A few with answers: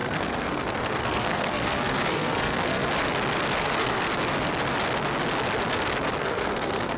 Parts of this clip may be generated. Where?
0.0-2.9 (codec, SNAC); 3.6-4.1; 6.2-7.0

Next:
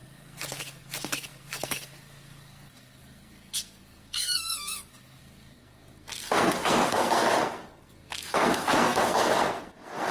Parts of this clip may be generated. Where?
0.0-10.1 (codec, SNAC)

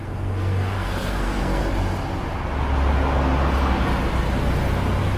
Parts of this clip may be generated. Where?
0.0-1.6 (codec, SNAC)

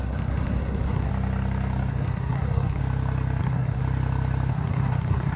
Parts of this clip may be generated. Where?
0.0-1.1 (codec, SNAC); 1.9-2.8; 3.4-3.8; 4.5-5.4

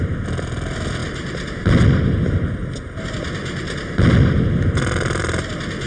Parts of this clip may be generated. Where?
none

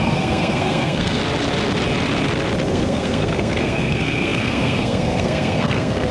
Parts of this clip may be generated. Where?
0.0-1.2 (codec, SNAC); 2.7-6.1

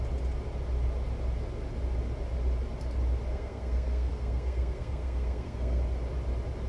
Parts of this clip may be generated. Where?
3.3-5.8 (codec, SNAC)